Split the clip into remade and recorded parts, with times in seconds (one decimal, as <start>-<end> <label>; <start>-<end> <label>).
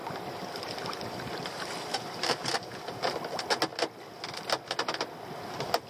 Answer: 0.0-5.9 recorded